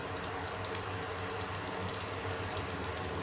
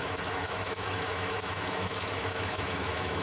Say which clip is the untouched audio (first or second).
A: first